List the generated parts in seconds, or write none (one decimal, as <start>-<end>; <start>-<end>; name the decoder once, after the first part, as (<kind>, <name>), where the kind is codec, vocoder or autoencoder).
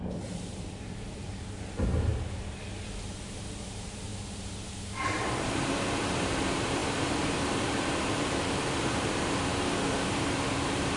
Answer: 0.0-11.0 (vocoder, BigVGAN v2)